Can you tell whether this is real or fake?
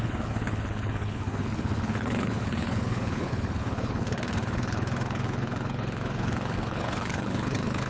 fake